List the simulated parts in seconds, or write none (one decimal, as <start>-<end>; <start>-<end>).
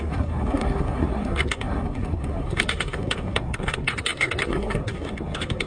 0.0-5.7